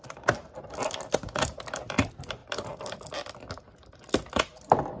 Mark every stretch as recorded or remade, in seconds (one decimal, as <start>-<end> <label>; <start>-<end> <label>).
0.0-5.0 recorded